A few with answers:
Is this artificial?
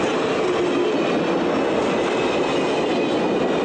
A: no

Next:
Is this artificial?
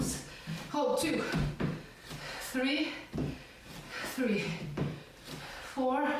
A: no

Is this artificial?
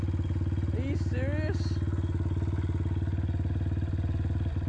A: no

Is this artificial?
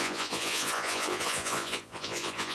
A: yes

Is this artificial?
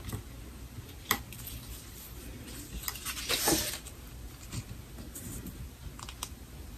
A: no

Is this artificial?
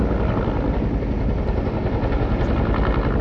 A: no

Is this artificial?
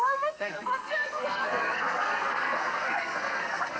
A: yes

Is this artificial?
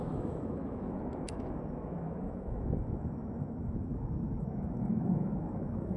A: yes